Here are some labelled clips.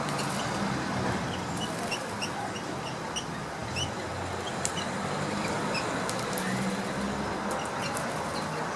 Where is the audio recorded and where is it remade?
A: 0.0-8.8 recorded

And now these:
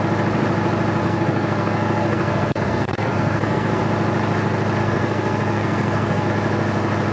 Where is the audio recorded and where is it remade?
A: 0.0-1.0 recorded; 1.0-3.8 remade; 3.8-4.8 recorded; 4.8-6.3 remade; 6.3-7.1 recorded

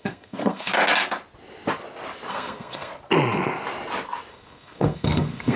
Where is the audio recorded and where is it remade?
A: 0.0-0.7 remade; 0.7-2.3 recorded; 2.3-2.9 remade; 2.9-4.3 recorded; 4.3-5.6 remade

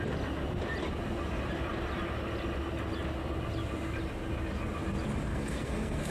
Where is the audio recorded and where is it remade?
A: 0.0-5.3 recorded; 5.3-6.1 remade

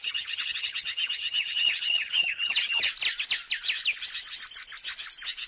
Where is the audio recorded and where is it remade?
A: 0.0-2.9 remade; 2.9-5.5 recorded

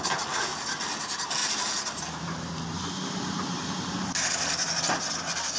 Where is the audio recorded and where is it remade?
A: 0.0-1.4 recorded; 1.4-4.8 remade; 4.8-5.6 recorded